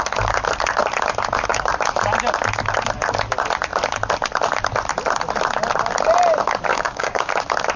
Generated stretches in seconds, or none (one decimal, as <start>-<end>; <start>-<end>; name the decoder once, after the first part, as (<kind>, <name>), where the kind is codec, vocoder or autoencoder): 6.7-7.3 (codec, DAC)